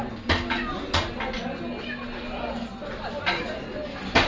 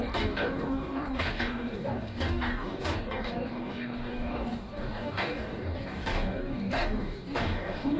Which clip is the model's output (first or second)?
second